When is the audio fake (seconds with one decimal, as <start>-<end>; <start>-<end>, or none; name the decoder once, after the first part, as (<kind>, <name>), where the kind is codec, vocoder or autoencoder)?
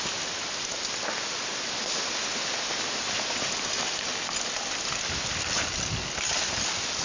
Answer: none